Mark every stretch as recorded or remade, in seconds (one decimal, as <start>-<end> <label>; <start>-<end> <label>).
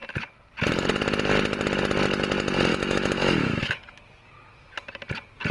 0.0-2.7 recorded; 2.7-4.0 remade; 4.0-5.5 recorded